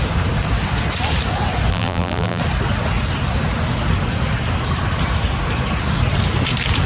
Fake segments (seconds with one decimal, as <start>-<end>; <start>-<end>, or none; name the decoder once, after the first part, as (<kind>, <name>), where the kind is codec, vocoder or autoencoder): 1.7-2.4 (vocoder, BigVGAN v2)